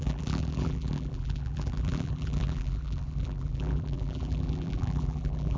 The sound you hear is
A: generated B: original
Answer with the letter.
A